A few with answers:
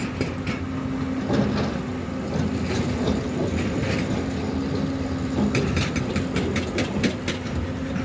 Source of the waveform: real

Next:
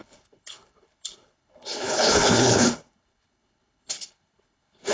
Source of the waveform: fake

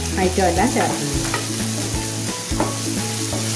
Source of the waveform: real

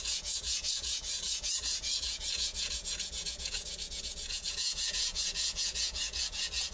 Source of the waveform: fake